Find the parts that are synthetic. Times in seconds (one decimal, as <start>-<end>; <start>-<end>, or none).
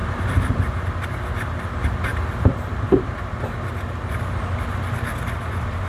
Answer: none